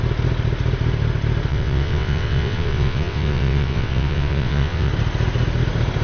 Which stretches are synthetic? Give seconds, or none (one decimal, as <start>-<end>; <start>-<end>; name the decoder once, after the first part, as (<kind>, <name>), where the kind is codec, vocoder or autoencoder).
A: 1.5-4.9 (vocoder, WaveNeXt)